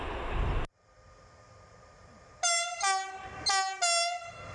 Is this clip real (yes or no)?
yes